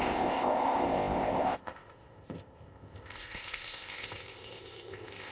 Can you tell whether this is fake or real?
fake